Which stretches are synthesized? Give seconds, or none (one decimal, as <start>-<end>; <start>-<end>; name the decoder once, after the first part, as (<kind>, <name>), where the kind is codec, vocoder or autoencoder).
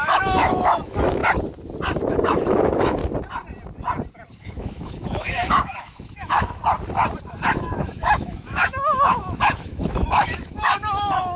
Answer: 0.0-1.2 (autoencoder, DAC-VAE); 2.1-3.0; 4.4-6.6; 7.5-11.4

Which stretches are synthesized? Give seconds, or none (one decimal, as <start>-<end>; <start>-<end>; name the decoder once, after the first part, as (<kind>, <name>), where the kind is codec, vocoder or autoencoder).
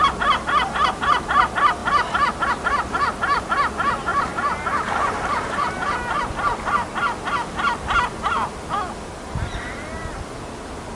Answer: 1.8-2.5 (vocoder, BigVGAN v2); 4.1-6.3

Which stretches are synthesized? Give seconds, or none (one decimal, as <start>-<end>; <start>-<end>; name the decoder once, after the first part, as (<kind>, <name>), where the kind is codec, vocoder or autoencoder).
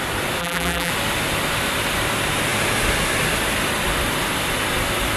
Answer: 0.4-0.9 (vocoder, BigVGAN v2)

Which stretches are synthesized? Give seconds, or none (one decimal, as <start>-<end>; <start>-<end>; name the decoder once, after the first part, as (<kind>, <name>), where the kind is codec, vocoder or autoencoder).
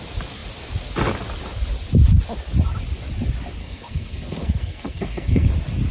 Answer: 3.6-5.5 (codec, SNAC)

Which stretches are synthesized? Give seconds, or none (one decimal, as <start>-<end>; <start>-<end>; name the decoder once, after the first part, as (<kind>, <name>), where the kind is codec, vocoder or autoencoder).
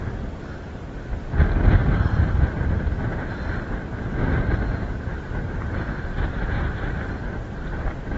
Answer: 1.8-2.3 (vocoder, BigVGAN v2); 4.2-7.1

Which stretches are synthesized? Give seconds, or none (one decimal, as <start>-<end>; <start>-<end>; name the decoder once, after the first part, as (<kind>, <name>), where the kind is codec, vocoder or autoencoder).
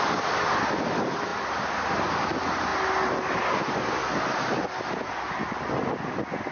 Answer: none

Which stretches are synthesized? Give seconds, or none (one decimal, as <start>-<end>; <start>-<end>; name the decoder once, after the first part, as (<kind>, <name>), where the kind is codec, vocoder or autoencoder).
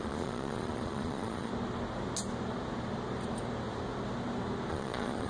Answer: 0.0-1.5 (vocoder, Vocos); 4.7-5.3